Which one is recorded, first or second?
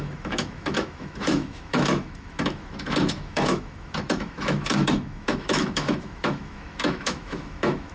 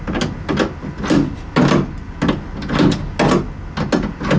second